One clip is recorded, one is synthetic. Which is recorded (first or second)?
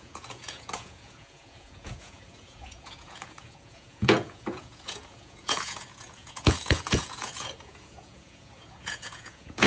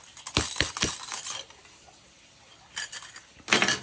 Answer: second